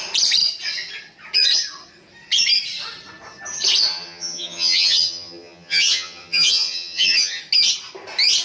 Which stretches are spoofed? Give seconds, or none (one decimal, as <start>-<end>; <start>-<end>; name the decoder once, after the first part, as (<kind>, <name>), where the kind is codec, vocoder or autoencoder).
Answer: 3.9-7.4 (vocoder, HiFi-GAN)